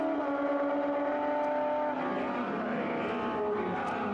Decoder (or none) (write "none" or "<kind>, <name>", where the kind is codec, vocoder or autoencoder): none